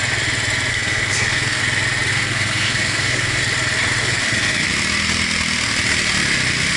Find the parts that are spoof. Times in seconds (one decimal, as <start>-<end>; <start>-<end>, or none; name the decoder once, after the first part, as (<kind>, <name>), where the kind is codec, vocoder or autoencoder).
0.7-1.6 (codec, SNAC); 2.1-3.4; 4.0-4.7